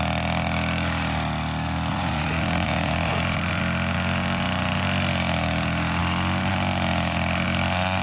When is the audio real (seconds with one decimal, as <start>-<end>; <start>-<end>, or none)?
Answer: 0.0-1.9; 3.6-8.0